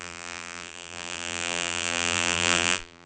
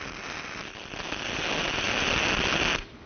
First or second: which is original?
second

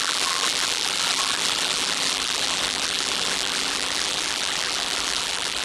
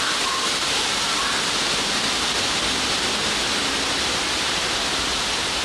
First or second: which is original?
second